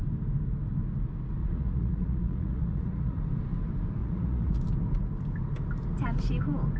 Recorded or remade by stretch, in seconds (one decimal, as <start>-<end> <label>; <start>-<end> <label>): 0.0-1.4 recorded; 1.4-3.2 remade; 3.2-4.0 recorded; 4.0-4.6 remade; 4.6-6.8 recorded